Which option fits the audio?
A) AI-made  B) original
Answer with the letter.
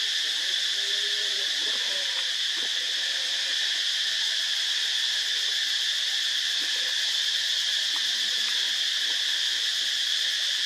B